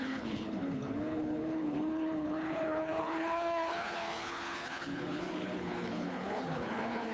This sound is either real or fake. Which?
fake